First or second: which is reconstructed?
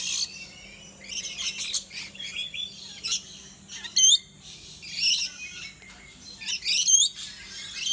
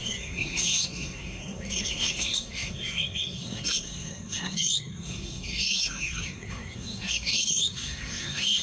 second